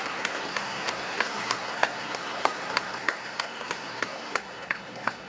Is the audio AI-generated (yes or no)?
yes